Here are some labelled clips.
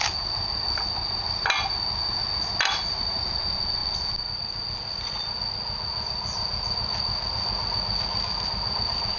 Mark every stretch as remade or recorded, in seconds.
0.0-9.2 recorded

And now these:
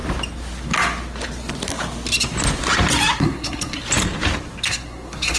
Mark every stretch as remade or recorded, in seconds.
0.0-3.2 recorded; 3.2-3.8 remade; 3.8-4.7 recorded; 4.7-5.4 remade